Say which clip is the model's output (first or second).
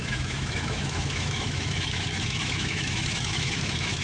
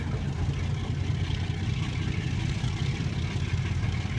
first